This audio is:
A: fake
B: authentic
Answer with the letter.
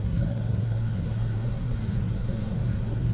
A